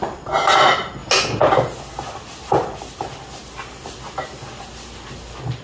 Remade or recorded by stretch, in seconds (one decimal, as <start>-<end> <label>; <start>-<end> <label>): 0.0-2.6 recorded; 2.6-3.1 remade; 3.1-5.6 recorded

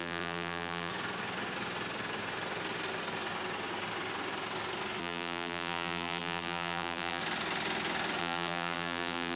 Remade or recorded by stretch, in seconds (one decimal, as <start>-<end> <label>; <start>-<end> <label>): 0.0-0.9 remade; 0.9-5.0 recorded; 5.0-7.2 remade; 7.2-8.2 recorded; 8.2-9.4 remade